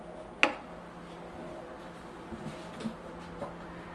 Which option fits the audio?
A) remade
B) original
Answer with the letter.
B